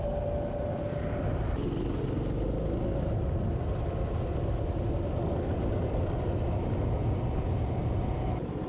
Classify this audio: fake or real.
real